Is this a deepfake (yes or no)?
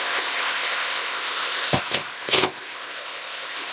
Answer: yes